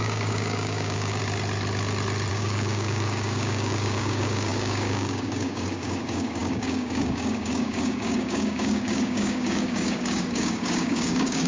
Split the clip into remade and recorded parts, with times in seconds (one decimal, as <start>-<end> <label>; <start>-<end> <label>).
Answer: 0.0-1.2 remade; 1.2-2.3 recorded; 2.3-11.5 remade